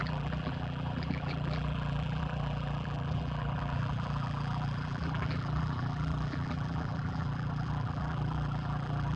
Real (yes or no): no